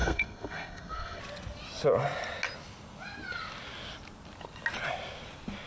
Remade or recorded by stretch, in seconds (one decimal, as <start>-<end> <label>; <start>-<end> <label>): 0.0-1.2 remade; 1.2-5.7 recorded